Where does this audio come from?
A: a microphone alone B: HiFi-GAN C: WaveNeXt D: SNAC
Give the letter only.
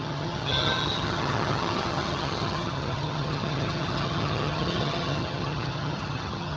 B